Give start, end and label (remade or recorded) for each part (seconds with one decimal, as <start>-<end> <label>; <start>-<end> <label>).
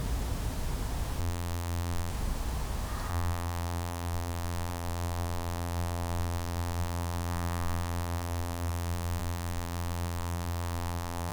0.0-1.2 recorded; 1.2-2.1 remade; 2.1-3.1 recorded; 3.1-11.3 remade